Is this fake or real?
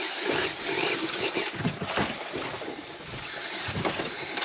fake